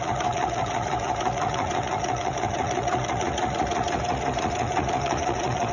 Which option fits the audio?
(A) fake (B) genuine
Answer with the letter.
A